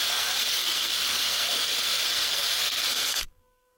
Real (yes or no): no